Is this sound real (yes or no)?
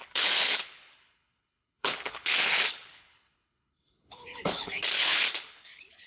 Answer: no